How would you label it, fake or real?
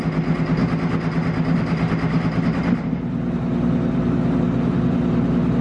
real